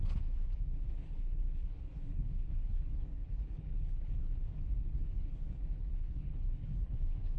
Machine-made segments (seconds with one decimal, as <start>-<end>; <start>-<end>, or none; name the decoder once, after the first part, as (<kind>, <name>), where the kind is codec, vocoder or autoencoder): 0.0-7.4 (codec, HILCodec)